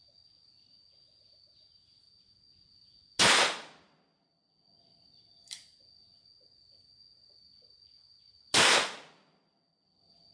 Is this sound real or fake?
real